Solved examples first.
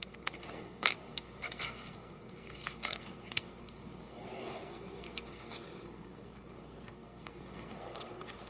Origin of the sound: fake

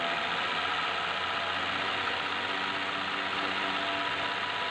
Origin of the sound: real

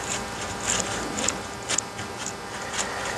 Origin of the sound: real